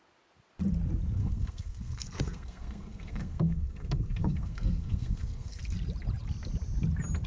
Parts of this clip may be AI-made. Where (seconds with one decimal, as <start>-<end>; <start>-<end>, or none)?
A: 1.2-5.6